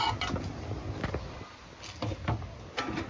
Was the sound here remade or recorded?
recorded